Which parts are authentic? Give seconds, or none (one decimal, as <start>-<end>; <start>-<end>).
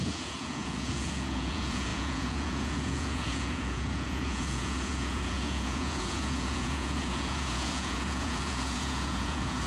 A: none